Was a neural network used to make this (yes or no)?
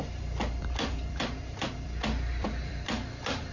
yes